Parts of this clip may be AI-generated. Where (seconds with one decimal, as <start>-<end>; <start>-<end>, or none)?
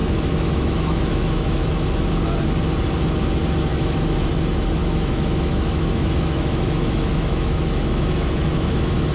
0.0-2.1; 3.7-4.3; 4.8-9.1